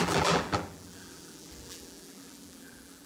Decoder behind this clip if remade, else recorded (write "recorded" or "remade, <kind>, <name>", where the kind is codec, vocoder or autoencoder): remade, vocoder, BigVGAN v2